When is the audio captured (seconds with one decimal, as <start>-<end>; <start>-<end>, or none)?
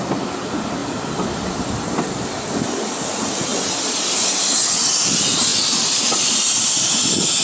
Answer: 0.0-0.8; 2.0-5.5; 6.5-7.4